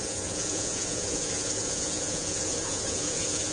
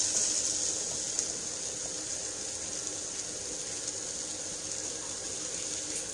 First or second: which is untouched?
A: second